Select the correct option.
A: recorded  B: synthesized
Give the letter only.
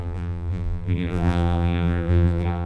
B